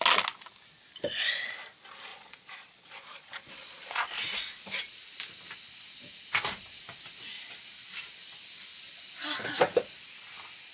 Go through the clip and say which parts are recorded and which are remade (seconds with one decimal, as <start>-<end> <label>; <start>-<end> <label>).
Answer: 0.0-2.1 recorded; 2.1-4.2 remade; 4.2-10.7 recorded